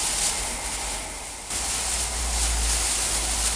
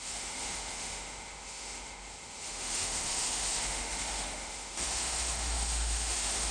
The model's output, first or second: second